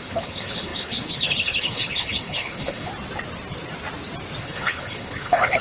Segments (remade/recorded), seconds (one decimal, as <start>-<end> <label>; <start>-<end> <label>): 0.0-2.9 remade; 2.9-4.4 recorded; 4.4-5.6 remade